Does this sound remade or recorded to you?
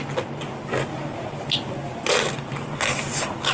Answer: recorded